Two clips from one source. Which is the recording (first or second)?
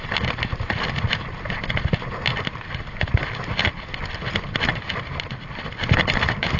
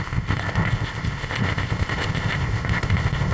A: first